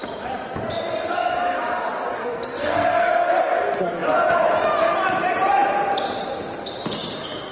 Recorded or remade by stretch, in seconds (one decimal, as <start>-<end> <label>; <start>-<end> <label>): 0.0-2.2 recorded; 2.2-3.1 remade; 3.1-7.5 recorded